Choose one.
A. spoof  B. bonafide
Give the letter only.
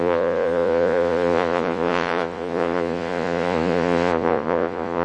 A